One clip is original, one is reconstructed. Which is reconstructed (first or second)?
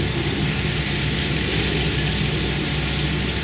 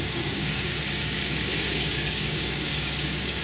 second